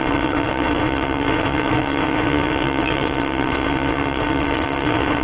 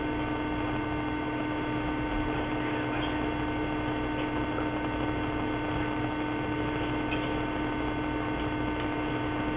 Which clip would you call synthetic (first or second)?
first